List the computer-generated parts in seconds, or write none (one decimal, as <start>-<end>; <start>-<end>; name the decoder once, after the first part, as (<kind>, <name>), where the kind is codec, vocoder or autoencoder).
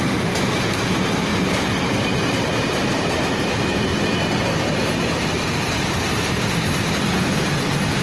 0.0-3.9 (vocoder, BigVGAN v2); 4.5-8.0